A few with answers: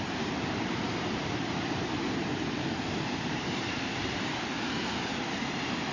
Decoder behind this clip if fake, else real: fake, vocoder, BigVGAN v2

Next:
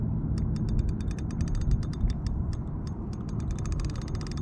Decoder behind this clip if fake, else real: real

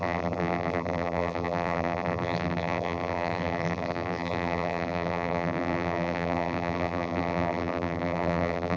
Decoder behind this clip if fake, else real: fake, vocoder, BigVGAN v2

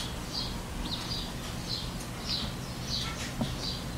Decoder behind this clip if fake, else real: real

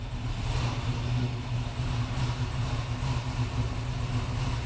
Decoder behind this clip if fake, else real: real